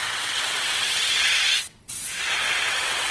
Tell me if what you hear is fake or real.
fake